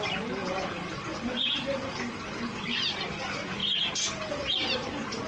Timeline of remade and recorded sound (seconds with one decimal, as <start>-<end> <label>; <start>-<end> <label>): 0.0-5.3 recorded